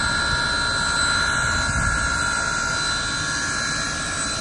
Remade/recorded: recorded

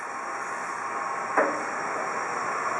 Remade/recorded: recorded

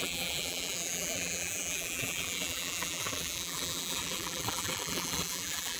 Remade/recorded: remade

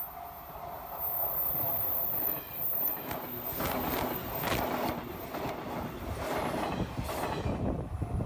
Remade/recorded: recorded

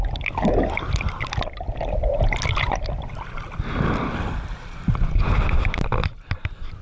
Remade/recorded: recorded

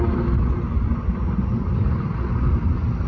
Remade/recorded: recorded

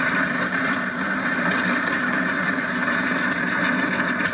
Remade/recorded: recorded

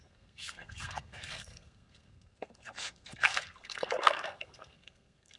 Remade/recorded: remade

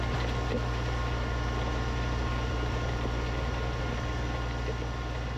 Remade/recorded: recorded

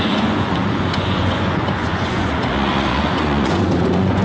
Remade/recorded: remade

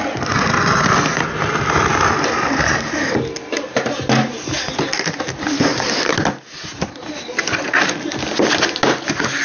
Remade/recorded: recorded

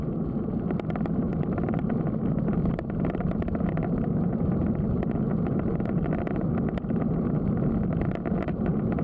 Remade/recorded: recorded